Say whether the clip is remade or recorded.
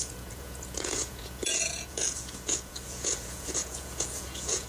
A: remade